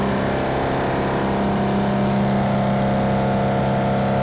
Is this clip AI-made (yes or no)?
no